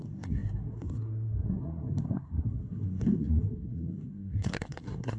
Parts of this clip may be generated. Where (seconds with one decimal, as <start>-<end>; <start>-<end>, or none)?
0.0-5.2